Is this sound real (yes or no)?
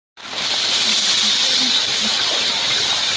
yes